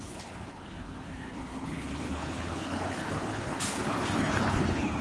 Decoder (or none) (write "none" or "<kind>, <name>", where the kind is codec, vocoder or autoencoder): codec, HILCodec